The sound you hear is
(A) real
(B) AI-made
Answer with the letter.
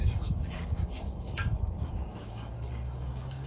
B